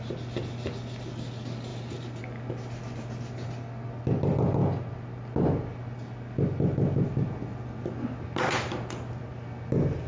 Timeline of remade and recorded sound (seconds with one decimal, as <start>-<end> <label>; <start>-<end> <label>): 0.0-10.1 recorded

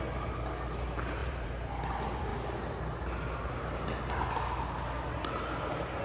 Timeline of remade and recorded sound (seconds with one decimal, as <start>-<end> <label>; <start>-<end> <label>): 0.0-1.2 recorded; 1.2-1.7 remade; 1.7-6.0 recorded